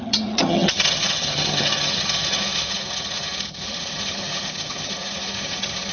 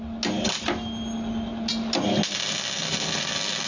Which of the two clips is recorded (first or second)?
second